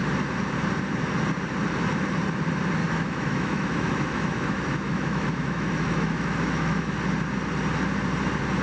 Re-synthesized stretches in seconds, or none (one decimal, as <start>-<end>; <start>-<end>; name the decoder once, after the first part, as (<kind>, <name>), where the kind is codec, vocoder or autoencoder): 2.8-7.0 (autoencoder, DAC-VAE)